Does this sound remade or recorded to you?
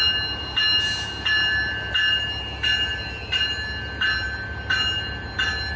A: recorded